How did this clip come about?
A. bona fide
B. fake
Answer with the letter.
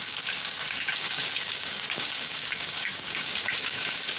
B